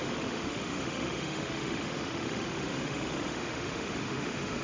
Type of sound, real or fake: fake